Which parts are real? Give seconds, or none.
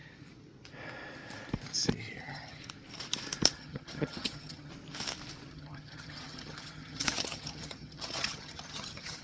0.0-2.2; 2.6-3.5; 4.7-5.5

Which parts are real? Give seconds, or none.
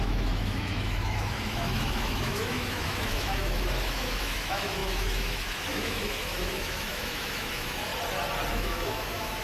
7.9-8.5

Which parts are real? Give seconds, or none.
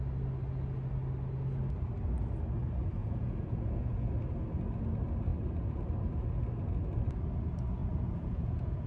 0.0-3.0; 4.1-7.8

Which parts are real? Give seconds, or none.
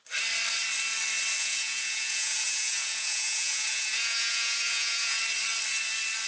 0.0-1.4; 5.2-6.3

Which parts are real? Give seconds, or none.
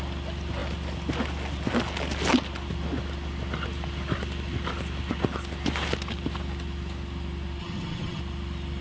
0.0-7.6; 8.2-8.8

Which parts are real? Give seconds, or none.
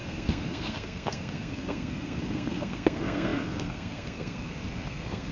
none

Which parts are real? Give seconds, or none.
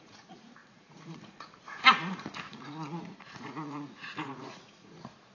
none